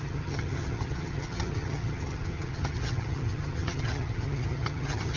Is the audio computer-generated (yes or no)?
yes